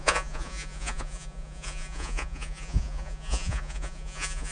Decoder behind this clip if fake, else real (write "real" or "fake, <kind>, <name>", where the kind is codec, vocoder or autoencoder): fake, vocoder, Vocos